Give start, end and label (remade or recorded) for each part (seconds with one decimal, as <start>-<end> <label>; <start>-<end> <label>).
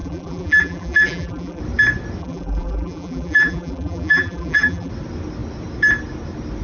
0.0-1.6 remade; 1.6-2.2 recorded; 2.2-4.9 remade; 4.9-6.6 recorded